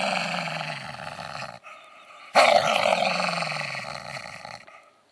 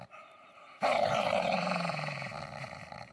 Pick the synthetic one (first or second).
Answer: second